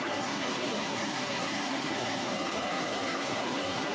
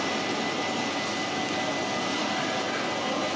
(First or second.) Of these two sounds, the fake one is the first